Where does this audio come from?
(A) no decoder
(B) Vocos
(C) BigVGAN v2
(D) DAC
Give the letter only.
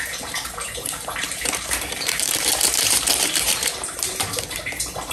C